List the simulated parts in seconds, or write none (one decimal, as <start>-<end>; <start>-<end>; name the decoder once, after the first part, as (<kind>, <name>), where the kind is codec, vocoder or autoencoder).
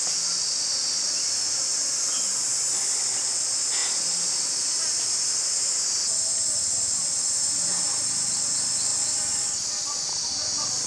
none